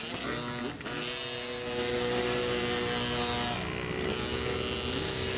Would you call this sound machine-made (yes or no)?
no